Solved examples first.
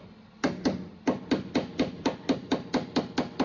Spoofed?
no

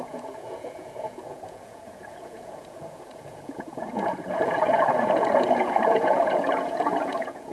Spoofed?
yes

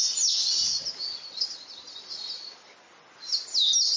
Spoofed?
no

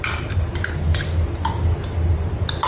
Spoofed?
no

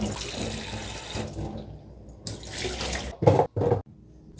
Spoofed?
no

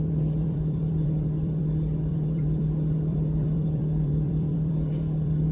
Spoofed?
yes